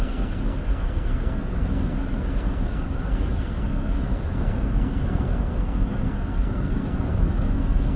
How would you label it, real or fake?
fake